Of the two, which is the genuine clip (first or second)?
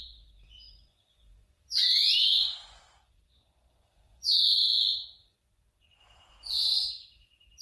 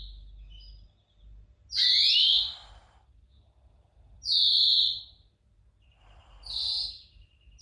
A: second